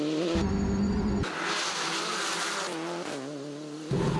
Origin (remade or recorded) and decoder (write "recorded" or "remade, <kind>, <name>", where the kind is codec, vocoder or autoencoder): recorded